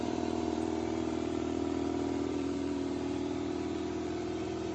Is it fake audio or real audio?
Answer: fake